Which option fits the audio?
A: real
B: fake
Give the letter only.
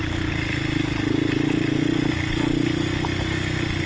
A